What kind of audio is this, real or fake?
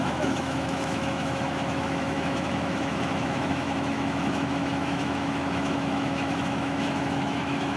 fake